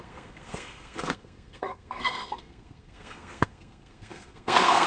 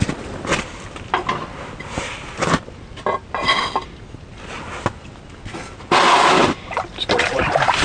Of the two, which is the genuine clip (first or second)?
second